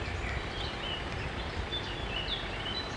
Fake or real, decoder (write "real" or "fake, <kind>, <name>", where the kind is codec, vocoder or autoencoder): fake, vocoder, BigVGAN v2